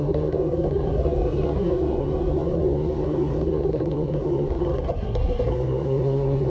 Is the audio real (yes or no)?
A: no